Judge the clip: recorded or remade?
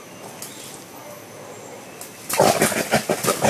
recorded